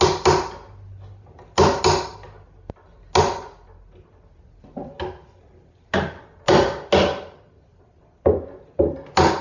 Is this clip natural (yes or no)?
yes